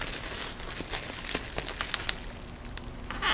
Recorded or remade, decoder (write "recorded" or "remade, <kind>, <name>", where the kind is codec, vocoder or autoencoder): recorded